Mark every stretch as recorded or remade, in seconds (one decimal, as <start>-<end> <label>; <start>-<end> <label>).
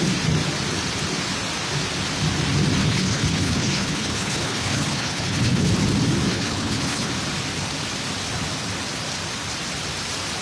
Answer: 0.0-2.8 recorded; 2.8-5.7 remade; 5.7-6.3 recorded; 6.3-7.1 remade; 7.1-10.4 recorded